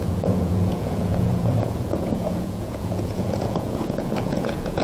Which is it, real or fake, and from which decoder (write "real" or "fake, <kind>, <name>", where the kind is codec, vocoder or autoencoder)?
fake, vocoder, Vocos